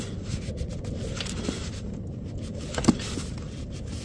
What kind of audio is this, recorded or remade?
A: recorded